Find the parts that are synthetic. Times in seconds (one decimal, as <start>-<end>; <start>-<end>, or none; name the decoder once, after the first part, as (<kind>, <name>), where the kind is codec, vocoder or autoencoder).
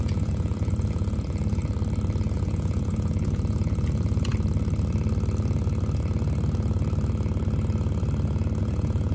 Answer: 0.0-1.6 (vocoder, Vocos); 2.3-4.3; 8.6-9.1